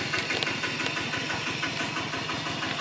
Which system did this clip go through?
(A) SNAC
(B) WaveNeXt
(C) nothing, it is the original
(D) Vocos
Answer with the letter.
C